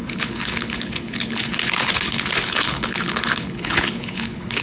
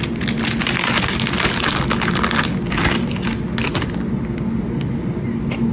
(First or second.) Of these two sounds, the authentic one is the second